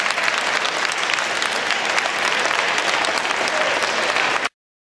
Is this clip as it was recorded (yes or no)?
yes